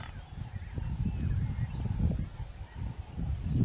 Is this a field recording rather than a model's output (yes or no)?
yes